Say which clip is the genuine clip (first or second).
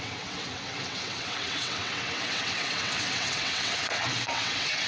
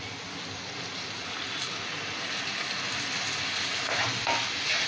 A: second